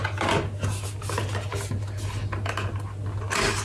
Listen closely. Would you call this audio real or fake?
real